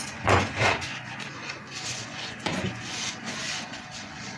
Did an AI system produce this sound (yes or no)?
yes